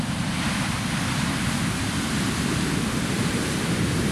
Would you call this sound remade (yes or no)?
yes